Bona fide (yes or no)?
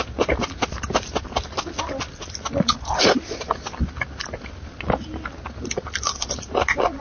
yes